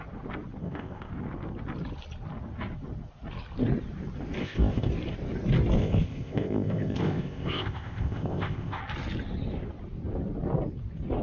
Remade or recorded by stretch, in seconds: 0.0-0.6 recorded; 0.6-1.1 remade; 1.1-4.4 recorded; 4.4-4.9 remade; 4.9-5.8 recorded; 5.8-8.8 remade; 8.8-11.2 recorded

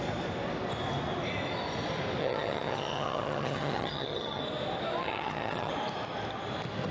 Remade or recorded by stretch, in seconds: 0.0-2.2 recorded; 2.2-4.4 remade; 4.4-5.0 recorded; 5.0-5.7 remade; 5.7-6.9 recorded